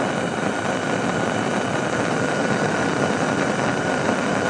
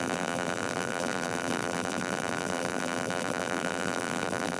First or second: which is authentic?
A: first